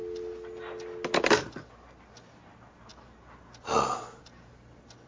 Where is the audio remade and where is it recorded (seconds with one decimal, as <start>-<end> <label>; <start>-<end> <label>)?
0.0-5.1 recorded